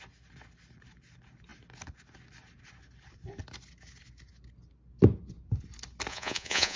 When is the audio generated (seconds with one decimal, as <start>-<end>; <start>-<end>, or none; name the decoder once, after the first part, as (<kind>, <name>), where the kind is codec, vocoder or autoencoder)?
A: 6.1-6.8 (vocoder, Vocos)